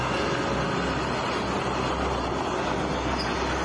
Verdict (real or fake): real